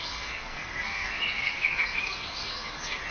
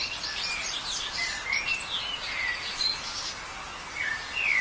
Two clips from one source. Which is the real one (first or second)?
second